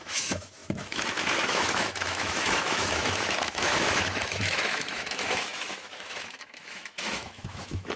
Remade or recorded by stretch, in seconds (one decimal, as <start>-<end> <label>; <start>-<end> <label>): 0.0-8.0 remade